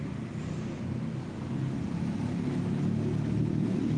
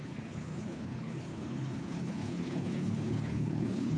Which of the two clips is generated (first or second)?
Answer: second